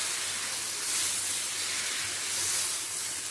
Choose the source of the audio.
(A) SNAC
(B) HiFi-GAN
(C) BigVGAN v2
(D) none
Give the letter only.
D